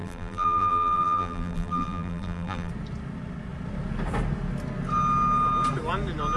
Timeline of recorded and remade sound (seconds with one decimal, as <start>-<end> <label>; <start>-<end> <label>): 0.0-2.7 remade; 2.7-6.4 recorded